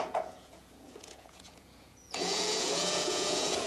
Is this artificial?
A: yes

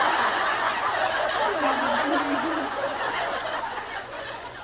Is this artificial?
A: yes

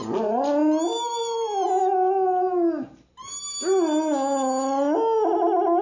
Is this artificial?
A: no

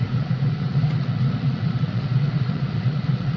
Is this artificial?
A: yes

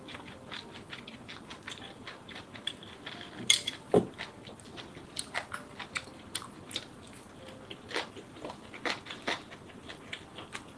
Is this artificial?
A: no